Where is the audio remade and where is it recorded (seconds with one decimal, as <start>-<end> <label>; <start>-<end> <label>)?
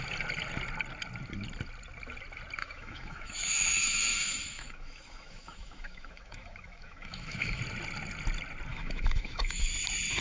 0.0-2.6 recorded; 2.6-7.6 remade; 7.6-8.7 recorded; 8.7-9.7 remade; 9.7-10.2 recorded